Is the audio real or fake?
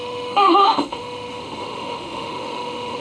fake